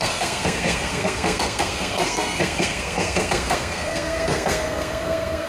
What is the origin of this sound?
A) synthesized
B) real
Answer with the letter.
A